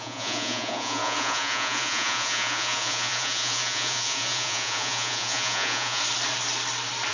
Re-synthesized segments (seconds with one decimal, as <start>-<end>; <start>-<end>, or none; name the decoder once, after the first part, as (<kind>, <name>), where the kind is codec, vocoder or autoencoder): 0.0-6.0 (vocoder, Vocos)